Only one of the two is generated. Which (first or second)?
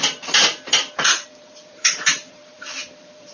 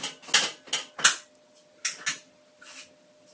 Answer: first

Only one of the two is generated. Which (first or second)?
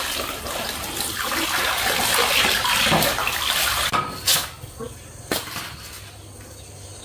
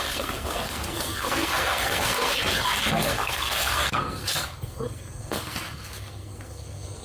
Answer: second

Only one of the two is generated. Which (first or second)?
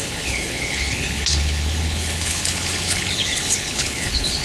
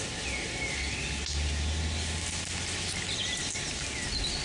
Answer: first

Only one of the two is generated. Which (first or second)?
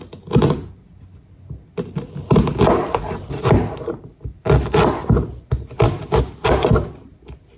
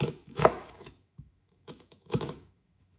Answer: second